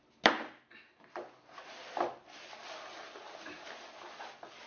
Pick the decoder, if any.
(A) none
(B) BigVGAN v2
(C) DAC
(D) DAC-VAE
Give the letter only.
A